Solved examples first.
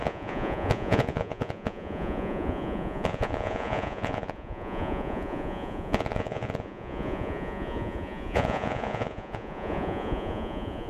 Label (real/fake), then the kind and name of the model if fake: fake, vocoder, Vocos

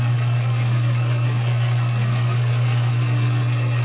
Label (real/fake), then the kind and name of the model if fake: fake, codec, SNAC